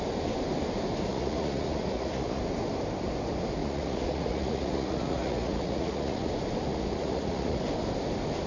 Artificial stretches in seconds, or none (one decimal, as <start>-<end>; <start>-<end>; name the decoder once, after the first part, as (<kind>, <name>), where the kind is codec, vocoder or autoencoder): 1.1-2.4 (vocoder, Vocos); 3.6-6.3; 6.7-7.6